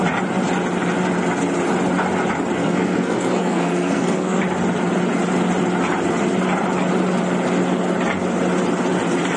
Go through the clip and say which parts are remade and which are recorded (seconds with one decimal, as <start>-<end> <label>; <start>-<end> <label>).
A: 0.0-2.6 recorded; 2.6-4.4 remade; 4.4-9.4 recorded